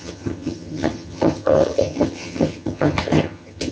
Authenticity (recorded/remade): remade